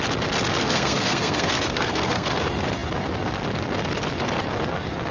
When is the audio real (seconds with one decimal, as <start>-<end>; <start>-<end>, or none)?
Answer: 0.0-0.6; 2.4-5.1